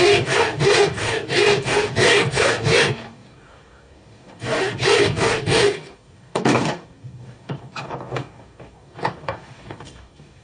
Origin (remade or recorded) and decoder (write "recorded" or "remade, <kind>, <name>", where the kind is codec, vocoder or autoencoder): remade, codec, DAC